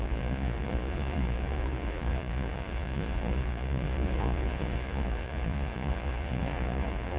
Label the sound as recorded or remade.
remade